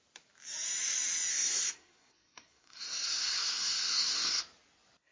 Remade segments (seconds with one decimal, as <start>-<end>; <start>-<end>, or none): 1.3-4.4